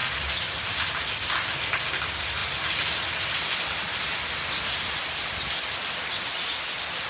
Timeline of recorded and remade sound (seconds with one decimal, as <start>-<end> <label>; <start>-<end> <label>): 0.0-7.1 recorded